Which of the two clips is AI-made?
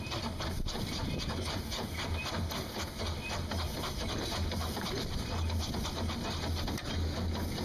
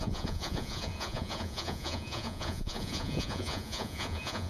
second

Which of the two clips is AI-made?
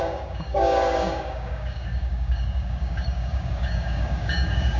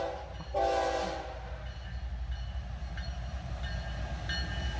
first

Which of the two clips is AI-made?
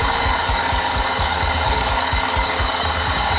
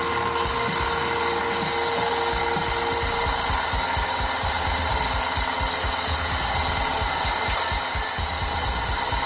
first